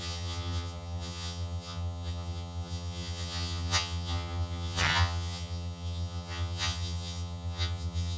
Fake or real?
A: fake